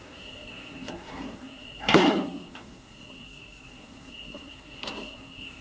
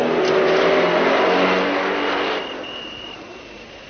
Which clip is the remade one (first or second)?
first